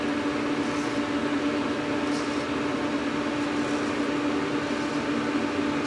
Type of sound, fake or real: real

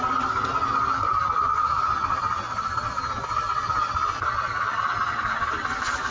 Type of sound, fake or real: real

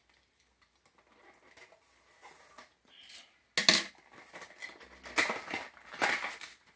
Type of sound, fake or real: real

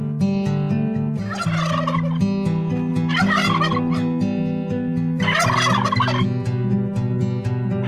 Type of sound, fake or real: real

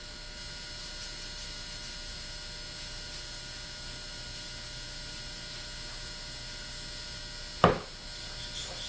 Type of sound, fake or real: real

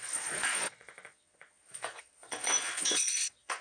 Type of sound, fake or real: fake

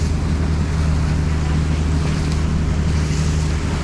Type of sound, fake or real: real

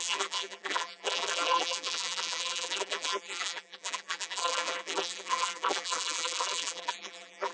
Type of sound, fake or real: fake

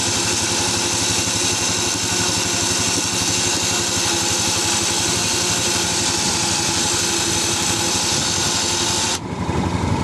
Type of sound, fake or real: real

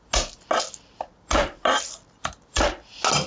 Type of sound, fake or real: real